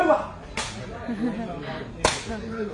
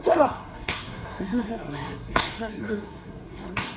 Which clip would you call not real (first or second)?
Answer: second